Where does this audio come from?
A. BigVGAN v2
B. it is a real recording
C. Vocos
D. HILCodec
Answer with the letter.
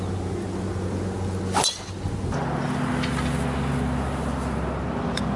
B